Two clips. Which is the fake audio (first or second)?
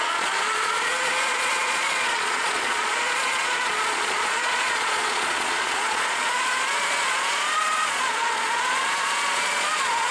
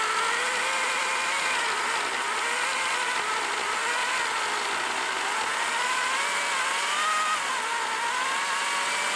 first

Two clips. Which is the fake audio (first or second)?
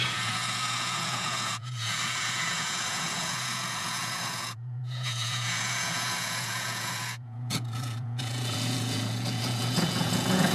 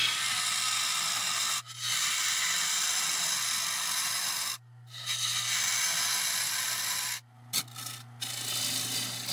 first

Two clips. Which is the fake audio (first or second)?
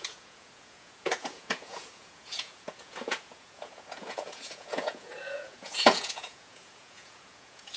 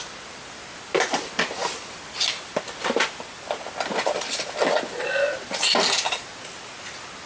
first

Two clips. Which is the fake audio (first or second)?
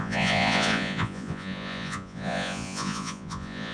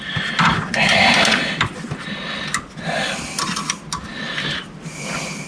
first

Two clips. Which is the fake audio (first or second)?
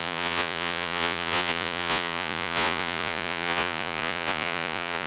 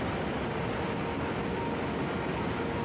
first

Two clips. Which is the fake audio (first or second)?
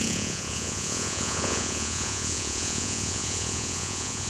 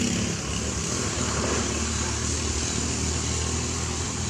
first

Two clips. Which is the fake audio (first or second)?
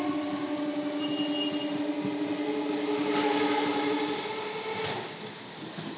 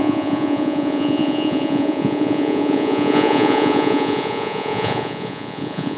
second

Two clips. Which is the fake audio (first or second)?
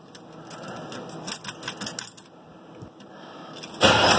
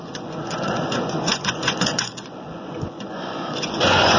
second